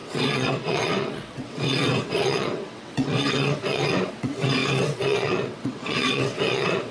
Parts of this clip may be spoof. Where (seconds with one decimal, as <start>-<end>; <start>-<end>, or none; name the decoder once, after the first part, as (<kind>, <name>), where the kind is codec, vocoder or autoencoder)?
0.0-6.9 (vocoder, WaveNeXt)

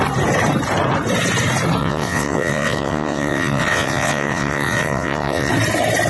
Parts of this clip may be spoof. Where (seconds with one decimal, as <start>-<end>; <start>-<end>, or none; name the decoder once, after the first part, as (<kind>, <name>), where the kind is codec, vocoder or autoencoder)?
1.8-5.5 (vocoder, WaveNeXt)

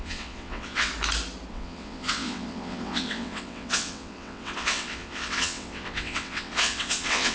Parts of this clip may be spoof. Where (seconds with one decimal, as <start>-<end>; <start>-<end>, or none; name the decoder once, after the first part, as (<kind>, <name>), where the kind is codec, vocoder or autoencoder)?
0.0-0.9 (vocoder, WaveNeXt); 1.5-7.3

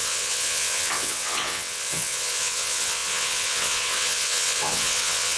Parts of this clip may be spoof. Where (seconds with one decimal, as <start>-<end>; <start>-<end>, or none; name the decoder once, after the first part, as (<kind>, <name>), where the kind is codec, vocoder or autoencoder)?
0.0-5.4 (vocoder, WaveNeXt)

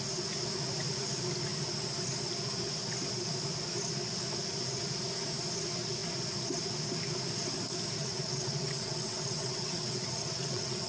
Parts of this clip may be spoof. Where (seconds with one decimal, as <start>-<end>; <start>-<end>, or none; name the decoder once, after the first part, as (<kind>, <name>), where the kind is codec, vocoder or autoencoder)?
8.0-10.9 (vocoder, WaveNeXt)